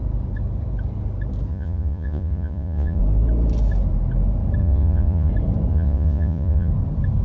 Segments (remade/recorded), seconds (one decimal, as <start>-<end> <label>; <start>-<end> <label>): 0.0-1.5 recorded; 1.5-3.0 remade; 3.0-4.6 recorded; 4.6-5.3 remade; 5.3-5.7 recorded; 5.7-6.7 remade; 6.7-7.2 recorded